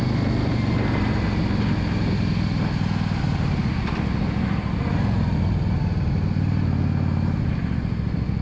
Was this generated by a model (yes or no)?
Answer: no